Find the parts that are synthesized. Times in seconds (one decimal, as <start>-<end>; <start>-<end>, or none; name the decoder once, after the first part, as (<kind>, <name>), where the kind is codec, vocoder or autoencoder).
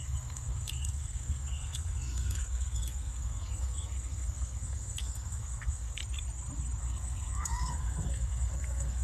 0.0-6.0 (codec, SNAC); 6.8-9.0